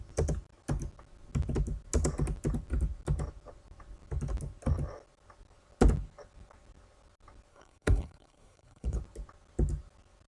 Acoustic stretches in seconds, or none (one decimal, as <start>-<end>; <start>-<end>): 0.0-7.5; 9.0-10.3